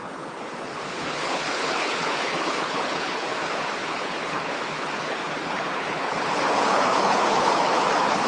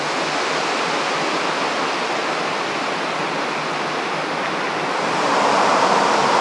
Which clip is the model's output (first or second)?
first